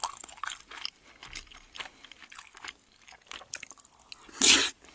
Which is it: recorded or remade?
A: recorded